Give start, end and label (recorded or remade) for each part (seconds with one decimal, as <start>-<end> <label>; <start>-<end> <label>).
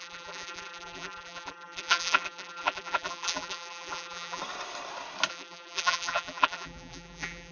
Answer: 0.0-4.4 remade; 4.4-5.3 recorded; 5.3-7.5 remade